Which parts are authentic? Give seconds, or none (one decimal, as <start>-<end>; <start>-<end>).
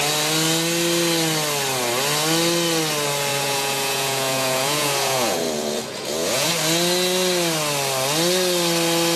0.0-3.3; 6.5-9.2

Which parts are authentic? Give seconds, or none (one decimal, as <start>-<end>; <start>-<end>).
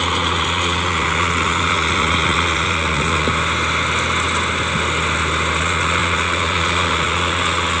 3.3-5.6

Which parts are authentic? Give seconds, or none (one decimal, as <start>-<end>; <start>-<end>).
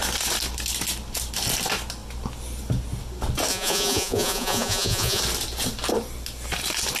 0.0-3.5; 5.2-7.0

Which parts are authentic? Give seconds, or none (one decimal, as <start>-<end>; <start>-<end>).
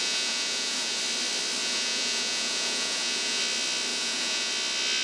1.0-1.6; 3.4-3.9; 4.5-5.0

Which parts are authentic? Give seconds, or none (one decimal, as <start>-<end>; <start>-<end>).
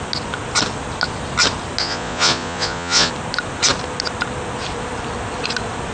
0.0-1.8; 3.1-5.9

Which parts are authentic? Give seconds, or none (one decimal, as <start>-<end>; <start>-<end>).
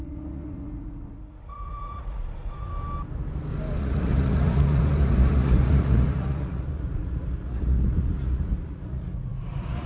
2.7-3.8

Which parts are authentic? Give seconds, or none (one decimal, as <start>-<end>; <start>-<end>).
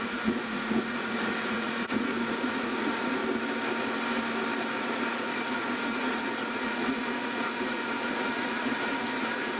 3.2-4.8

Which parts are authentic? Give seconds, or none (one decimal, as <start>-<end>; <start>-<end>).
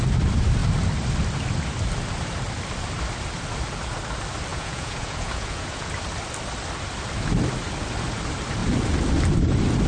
0.0-4.5; 5.9-9.9